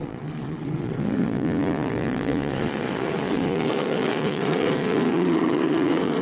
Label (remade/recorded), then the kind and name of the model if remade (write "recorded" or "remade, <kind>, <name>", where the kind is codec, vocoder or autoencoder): remade, vocoder, Vocos